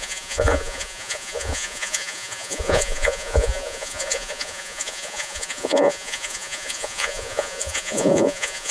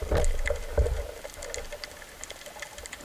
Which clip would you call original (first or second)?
second